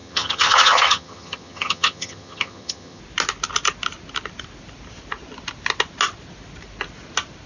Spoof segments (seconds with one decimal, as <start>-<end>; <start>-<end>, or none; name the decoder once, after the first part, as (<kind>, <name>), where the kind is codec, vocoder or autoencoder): 0.0-3.0 (vocoder, HiFi-GAN)

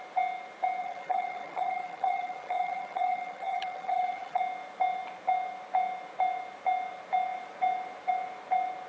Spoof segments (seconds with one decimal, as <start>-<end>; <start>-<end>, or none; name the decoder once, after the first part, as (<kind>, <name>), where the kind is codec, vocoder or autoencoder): 0.8-4.4 (vocoder, HiFi-GAN)

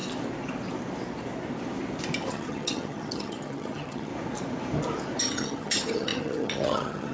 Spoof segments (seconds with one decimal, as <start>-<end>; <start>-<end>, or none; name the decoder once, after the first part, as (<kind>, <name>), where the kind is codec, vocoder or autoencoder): 2.3-4.1 (vocoder, HiFi-GAN); 5.2-7.1

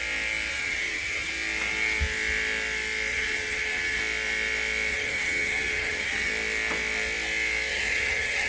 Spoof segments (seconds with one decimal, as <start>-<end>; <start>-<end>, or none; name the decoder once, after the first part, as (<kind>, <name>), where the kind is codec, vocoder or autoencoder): 0.5-1.3 (vocoder, HiFi-GAN); 3.1-4.0; 4.9-6.3; 7.7-8.5